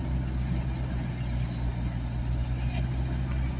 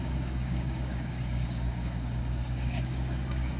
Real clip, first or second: first